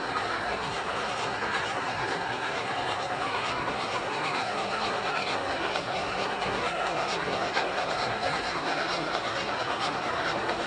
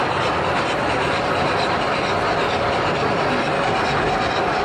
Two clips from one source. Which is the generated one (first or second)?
first